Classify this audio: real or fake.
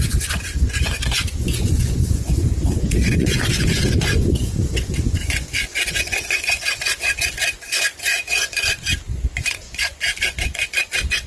fake